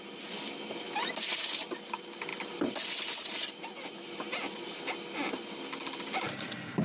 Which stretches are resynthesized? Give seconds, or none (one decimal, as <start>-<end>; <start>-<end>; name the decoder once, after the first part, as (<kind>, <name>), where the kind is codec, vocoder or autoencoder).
none